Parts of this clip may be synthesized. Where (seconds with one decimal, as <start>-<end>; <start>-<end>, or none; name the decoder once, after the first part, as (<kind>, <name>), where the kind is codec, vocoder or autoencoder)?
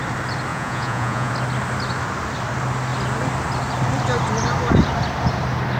0.5-1.3 (vocoder, Vocos)